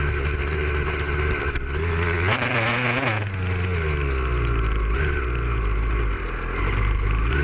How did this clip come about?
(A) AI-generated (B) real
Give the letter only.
B